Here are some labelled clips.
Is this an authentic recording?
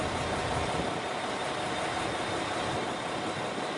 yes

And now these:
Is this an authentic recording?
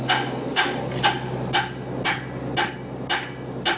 yes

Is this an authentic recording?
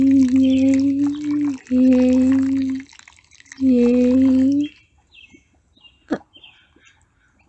yes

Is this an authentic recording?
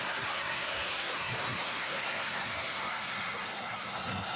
no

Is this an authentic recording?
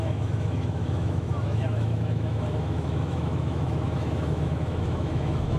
no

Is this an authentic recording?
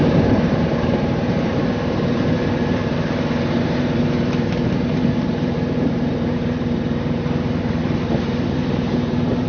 no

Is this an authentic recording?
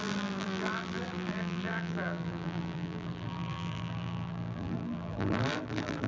no